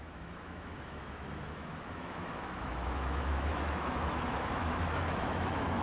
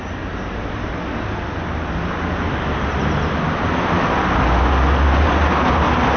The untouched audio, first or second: second